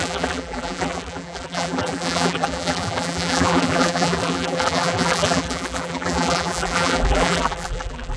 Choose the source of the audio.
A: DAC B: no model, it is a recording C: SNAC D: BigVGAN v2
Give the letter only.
D